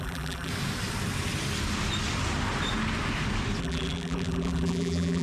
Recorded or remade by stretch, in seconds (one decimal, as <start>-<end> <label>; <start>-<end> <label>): 0.0-0.5 remade; 0.5-3.6 recorded; 3.6-5.2 remade